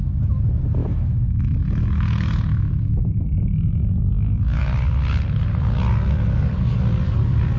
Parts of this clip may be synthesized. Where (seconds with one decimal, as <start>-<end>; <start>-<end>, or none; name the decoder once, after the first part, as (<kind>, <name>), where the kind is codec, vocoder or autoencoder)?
0.8-4.6 (autoencoder, DAC-VAE)